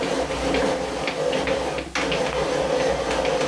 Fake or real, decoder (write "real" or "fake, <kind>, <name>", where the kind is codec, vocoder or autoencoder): real